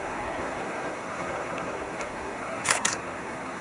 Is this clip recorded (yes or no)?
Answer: no